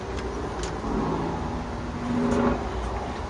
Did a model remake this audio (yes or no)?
no